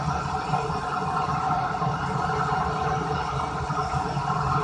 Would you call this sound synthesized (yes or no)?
no